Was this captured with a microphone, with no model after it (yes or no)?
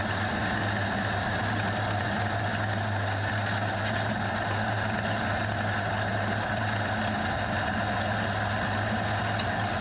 yes